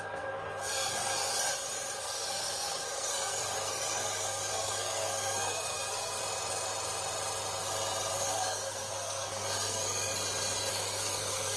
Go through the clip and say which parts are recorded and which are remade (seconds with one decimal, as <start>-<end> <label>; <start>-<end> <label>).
0.0-1.3 remade; 1.3-2.0 recorded; 2.0-6.2 remade; 6.2-8.1 recorded; 8.1-10.1 remade; 10.1-10.7 recorded; 10.7-11.6 remade